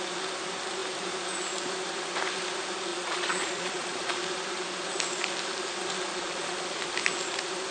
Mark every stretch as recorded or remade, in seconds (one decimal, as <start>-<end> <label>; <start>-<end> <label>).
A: 0.0-2.9 recorded; 2.9-4.1 remade; 4.1-6.1 recorded; 6.1-6.8 remade; 6.8-7.7 recorded